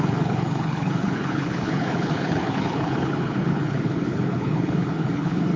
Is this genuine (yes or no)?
no